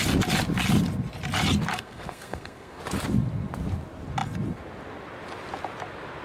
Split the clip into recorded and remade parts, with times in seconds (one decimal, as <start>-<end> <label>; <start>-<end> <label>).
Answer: 0.0-1.7 recorded; 1.7-2.8 remade; 2.8-6.2 recorded